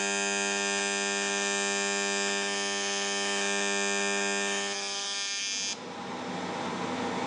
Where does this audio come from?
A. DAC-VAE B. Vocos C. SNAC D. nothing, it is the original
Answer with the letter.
D